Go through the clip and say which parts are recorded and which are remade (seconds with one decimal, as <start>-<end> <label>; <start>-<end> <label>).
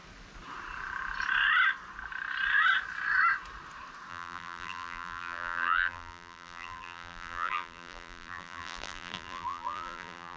0.0-4.1 recorded; 4.1-10.4 remade